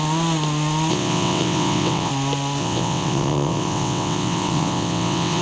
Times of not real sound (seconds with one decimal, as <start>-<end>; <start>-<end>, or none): 0.9-2.1; 2.6-5.4